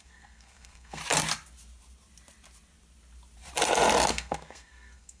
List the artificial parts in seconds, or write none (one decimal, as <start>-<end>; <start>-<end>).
0.0-1.0; 4.1-5.2